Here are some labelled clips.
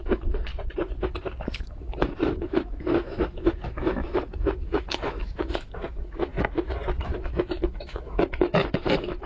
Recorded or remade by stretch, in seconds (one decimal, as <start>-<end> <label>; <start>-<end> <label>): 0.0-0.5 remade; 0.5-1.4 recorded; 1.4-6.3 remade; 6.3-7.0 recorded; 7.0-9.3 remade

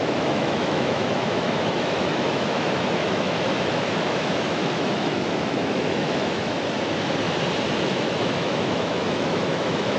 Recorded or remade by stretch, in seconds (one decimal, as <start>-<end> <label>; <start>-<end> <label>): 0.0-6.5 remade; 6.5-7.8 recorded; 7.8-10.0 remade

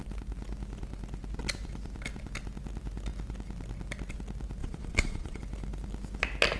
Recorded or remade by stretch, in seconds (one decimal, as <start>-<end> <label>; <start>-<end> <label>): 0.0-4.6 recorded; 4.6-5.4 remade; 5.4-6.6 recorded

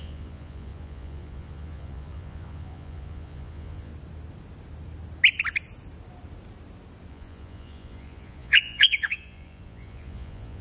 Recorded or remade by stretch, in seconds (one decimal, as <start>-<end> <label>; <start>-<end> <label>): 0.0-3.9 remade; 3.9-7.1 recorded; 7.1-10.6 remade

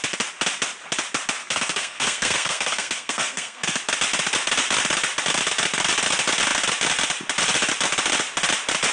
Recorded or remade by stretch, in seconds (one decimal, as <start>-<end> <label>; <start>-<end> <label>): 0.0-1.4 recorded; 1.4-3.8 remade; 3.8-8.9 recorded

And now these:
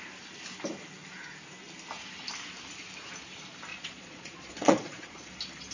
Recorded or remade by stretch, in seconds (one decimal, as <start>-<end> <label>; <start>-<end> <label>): 0.0-3.7 recorded; 3.7-5.3 remade; 5.3-5.7 recorded